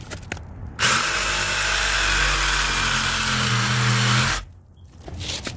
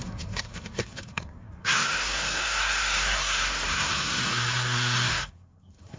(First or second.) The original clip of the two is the first